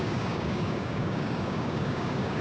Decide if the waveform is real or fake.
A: fake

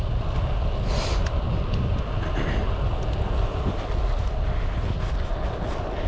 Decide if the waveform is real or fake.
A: real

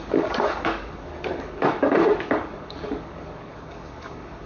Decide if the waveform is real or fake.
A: fake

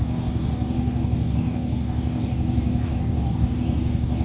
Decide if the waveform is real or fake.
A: fake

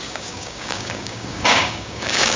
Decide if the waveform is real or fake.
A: fake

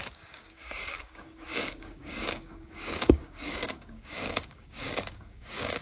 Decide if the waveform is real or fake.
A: fake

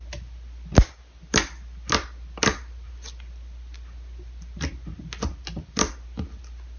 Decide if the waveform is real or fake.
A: real